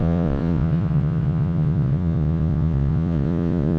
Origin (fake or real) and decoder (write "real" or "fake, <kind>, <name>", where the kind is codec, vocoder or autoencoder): fake, vocoder, Vocos